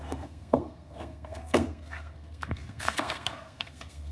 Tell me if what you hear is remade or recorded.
remade